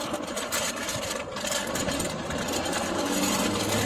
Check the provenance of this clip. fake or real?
real